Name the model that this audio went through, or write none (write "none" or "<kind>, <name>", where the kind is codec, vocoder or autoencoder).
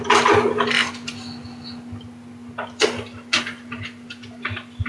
none